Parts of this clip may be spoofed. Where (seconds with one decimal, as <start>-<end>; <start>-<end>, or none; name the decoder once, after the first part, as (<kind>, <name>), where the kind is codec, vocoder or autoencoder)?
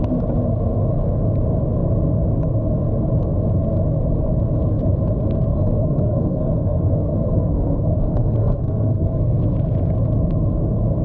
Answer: 5.5-9.5 (codec, SNAC)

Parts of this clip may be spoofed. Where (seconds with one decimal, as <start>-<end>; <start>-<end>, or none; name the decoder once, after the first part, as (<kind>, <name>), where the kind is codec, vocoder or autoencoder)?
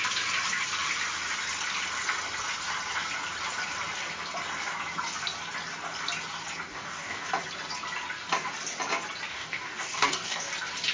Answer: 6.7-7.3 (codec, DAC); 9.3-10.5